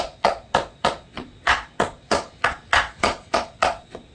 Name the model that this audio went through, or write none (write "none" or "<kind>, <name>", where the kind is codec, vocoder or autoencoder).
vocoder, Vocos